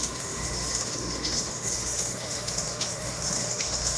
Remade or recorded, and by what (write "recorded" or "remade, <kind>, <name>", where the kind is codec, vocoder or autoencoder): remade, autoencoder, DAC-VAE